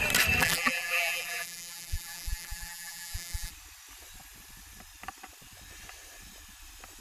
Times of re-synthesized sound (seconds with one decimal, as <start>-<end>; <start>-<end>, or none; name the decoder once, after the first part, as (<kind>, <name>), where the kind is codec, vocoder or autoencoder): 0.4-3.5 (vocoder, BigVGAN v2)